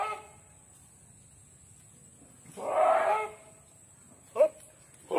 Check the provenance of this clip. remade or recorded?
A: recorded